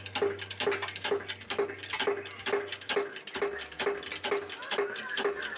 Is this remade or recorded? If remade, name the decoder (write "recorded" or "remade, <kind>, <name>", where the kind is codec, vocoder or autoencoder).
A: recorded